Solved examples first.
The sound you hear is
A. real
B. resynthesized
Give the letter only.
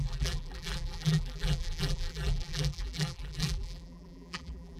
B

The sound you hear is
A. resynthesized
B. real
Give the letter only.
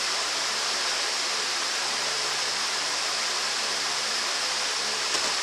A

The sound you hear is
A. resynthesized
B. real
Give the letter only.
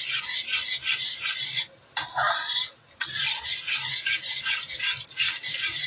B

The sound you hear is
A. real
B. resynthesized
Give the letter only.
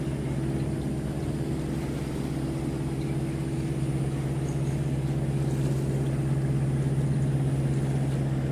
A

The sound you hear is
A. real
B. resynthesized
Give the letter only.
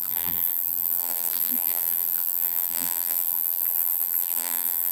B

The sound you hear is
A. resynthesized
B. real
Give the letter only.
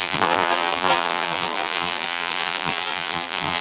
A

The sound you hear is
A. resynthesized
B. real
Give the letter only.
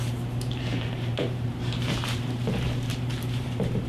A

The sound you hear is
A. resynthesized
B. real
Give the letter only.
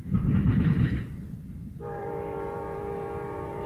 A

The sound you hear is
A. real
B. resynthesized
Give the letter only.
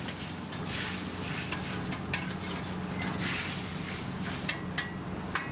A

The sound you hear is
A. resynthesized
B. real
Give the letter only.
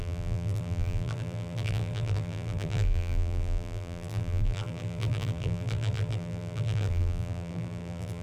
A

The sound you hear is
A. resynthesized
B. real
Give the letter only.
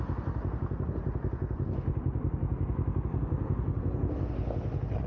B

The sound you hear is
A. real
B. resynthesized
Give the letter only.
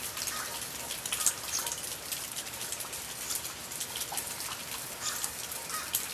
A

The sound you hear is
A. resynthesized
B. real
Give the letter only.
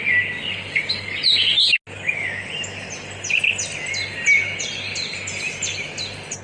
B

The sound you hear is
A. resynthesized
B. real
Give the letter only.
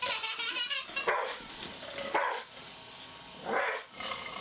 B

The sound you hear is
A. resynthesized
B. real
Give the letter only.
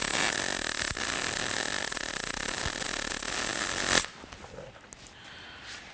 B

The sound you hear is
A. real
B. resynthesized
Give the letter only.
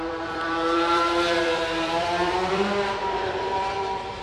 B